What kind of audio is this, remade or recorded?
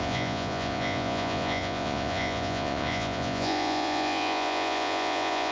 remade